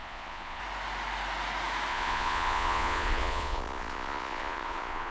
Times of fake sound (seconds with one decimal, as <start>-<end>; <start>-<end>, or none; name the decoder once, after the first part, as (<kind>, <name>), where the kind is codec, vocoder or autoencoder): 0.0-0.6 (vocoder, Vocos); 1.9-5.1